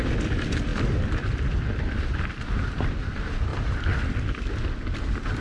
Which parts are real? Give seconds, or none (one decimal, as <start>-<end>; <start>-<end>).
0.0-0.7; 2.4-3.5; 4.5-5.4